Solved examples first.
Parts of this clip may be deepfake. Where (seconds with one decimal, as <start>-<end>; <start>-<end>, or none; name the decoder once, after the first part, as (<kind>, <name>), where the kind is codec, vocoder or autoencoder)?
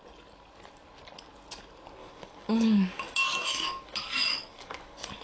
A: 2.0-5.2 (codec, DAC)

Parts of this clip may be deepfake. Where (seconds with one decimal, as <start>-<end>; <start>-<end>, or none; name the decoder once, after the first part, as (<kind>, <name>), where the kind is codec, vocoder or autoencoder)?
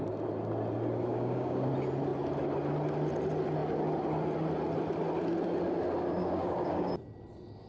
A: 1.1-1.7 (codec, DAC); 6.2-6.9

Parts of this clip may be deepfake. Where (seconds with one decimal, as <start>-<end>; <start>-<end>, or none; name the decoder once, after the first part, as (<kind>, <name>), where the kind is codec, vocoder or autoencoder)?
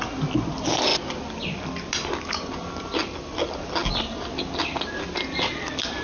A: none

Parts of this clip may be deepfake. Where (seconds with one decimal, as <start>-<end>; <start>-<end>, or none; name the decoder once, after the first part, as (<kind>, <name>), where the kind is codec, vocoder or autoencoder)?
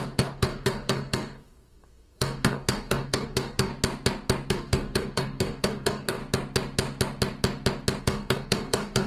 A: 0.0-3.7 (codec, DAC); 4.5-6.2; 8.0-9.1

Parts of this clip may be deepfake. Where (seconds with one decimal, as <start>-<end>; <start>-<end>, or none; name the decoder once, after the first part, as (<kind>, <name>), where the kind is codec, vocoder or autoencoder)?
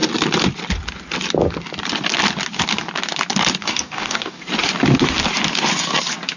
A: 3.6-4.4 (codec, DAC)